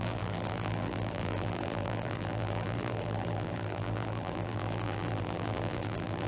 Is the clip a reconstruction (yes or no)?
yes